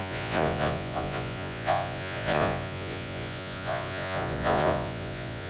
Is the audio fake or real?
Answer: fake